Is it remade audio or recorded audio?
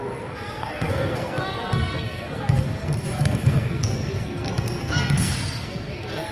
remade